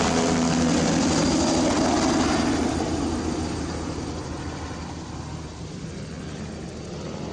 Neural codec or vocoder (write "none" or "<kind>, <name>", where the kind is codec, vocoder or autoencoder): none